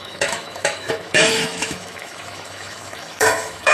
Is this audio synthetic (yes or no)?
yes